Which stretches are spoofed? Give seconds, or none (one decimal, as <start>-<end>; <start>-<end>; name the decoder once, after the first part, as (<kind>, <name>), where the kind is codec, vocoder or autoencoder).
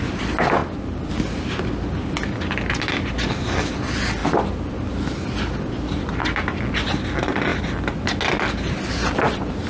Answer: none